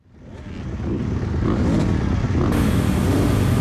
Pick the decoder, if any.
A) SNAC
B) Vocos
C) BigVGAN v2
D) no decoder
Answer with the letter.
D